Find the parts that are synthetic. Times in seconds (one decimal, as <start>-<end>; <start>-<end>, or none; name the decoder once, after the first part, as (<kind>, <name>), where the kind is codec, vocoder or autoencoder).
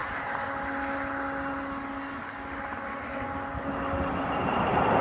none